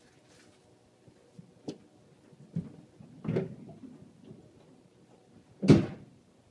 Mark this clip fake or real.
real